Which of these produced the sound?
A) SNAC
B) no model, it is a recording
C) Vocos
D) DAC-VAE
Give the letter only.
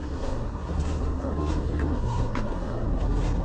A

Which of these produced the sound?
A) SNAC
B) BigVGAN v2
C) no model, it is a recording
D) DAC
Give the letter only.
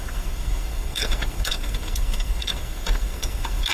A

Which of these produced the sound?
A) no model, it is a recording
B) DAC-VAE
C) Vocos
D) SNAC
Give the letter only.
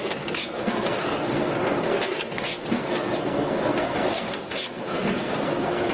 D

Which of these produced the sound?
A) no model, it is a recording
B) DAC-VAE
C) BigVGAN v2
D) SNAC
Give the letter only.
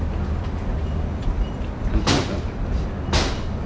A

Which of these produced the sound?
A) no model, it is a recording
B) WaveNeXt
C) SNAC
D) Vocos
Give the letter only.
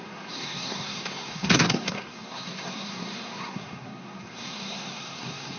C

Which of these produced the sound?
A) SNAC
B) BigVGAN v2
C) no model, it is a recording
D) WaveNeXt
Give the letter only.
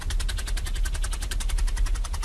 C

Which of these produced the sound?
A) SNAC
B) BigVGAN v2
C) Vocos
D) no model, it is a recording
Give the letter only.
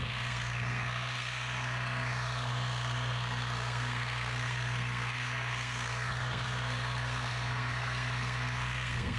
A